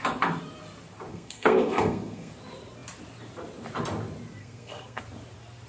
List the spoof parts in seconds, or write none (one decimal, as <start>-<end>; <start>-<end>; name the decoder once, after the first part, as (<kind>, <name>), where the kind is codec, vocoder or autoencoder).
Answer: 1.1-2.3 (codec, SNAC); 4.4-5.0